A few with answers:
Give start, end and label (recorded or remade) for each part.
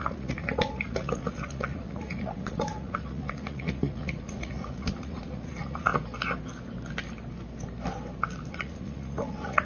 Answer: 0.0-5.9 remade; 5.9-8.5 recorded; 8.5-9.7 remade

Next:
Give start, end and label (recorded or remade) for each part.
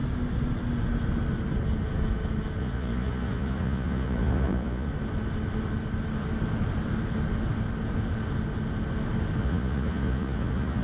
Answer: 0.0-2.6 recorded; 2.6-4.9 remade; 4.9-9.4 recorded; 9.4-10.8 remade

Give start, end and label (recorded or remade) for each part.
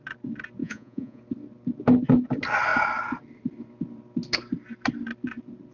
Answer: 0.0-0.6 recorded; 0.6-1.2 remade; 1.2-5.7 recorded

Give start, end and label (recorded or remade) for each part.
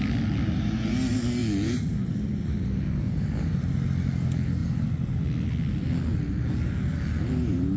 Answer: 0.0-7.8 recorded